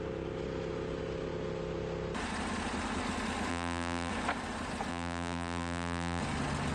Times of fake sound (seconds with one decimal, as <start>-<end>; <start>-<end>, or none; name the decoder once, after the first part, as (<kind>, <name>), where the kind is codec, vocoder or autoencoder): 3.5-4.1 (vocoder, BigVGAN v2); 4.9-6.2